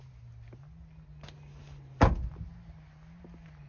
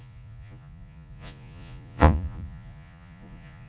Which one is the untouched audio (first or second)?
first